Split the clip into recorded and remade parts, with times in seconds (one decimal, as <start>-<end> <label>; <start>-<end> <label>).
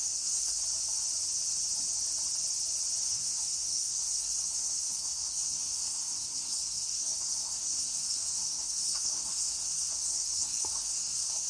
0.0-0.6 remade; 0.6-3.0 recorded; 3.0-11.5 remade